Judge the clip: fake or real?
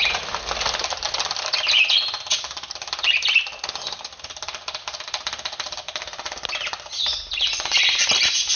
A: real